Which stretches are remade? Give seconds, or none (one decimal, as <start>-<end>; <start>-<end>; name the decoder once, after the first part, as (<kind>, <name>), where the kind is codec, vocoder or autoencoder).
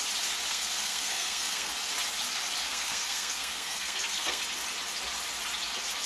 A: 0.5-1.7 (codec, SNAC); 2.6-4.4